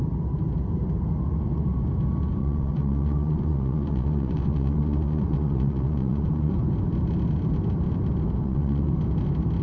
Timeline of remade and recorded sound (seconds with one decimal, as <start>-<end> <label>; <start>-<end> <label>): 0.0-2.4 recorded; 2.4-6.5 remade; 6.5-8.4 recorded; 8.4-8.9 remade; 8.9-9.6 recorded